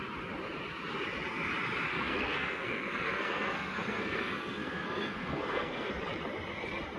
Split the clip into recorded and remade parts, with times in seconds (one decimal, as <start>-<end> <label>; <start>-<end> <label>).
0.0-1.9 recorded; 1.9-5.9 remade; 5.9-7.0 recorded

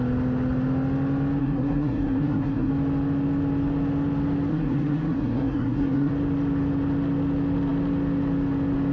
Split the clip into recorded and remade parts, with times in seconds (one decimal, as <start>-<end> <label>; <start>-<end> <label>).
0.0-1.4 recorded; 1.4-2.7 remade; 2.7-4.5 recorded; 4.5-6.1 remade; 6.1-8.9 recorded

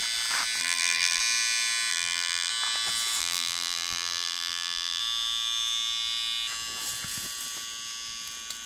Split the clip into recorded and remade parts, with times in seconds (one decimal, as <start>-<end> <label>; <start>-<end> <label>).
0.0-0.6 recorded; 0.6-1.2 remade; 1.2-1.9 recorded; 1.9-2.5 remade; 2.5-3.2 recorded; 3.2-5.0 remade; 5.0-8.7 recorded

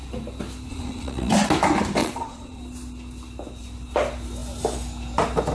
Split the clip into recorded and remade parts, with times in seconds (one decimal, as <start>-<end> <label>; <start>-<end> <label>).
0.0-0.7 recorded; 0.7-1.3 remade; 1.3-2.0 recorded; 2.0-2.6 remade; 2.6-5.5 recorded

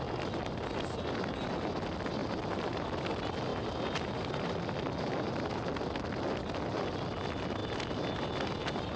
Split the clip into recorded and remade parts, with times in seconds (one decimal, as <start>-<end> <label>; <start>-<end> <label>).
0.0-2.2 recorded; 2.2-2.8 remade; 2.8-3.5 recorded; 3.5-4.7 remade; 4.7-9.0 recorded

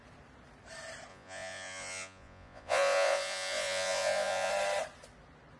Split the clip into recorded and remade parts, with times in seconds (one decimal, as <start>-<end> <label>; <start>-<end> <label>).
0.0-1.1 recorded; 1.1-4.5 remade; 4.5-5.6 recorded

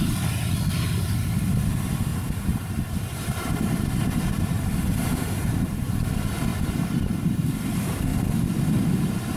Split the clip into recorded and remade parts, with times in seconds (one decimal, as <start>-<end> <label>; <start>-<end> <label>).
0.0-2.1 recorded; 2.1-6.1 remade; 6.1-6.5 recorded; 6.5-7.5 remade; 7.5-9.4 recorded